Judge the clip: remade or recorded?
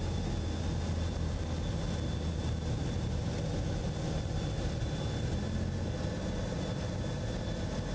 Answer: recorded